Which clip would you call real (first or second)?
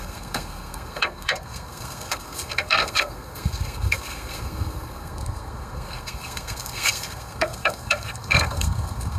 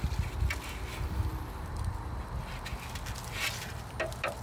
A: second